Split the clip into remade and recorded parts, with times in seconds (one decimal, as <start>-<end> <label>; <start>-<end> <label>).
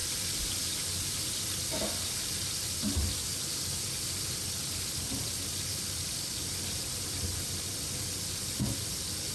0.0-0.5 remade; 0.5-5.7 recorded; 5.7-6.3 remade; 6.3-9.3 recorded